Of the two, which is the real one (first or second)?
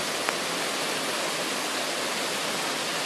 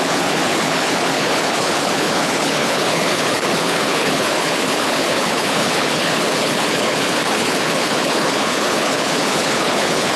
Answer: first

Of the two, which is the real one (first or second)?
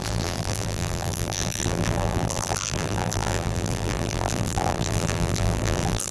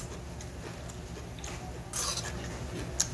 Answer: second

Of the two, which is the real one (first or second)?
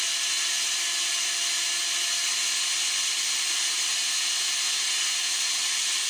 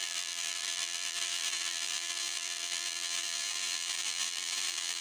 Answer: first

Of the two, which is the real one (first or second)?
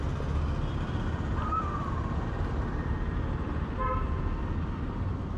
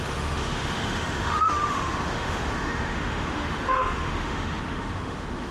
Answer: first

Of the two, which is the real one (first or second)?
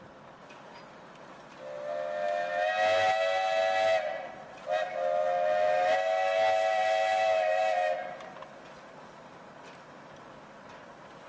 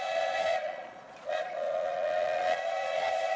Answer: first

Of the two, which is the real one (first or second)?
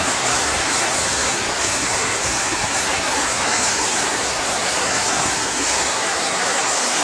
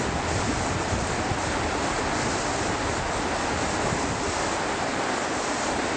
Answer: second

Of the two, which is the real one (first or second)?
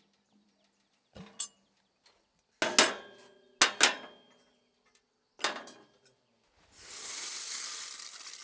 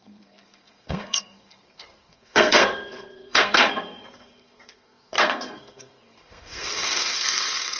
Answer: first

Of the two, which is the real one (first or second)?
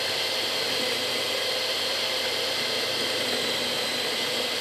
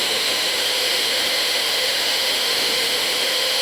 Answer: first